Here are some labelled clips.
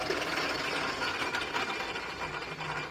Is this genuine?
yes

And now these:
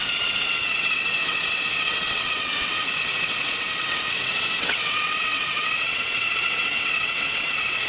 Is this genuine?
no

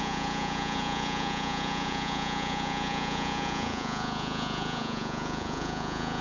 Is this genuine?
no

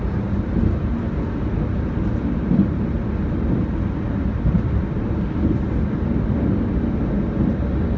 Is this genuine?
yes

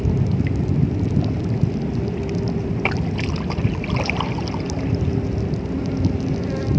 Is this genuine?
yes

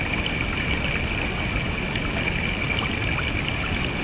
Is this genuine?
yes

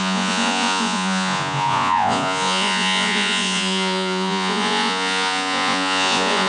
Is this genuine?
no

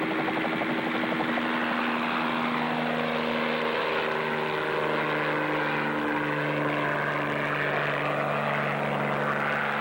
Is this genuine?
yes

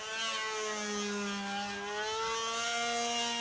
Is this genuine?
yes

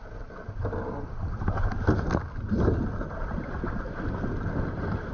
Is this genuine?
yes